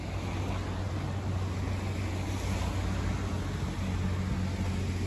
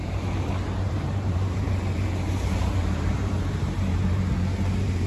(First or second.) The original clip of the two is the first